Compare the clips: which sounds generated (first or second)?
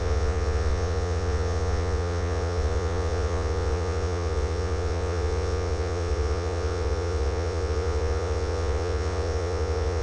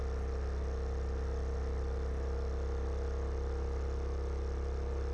first